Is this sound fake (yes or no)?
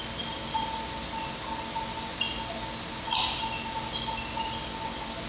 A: no